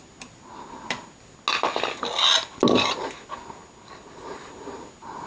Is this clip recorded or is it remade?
recorded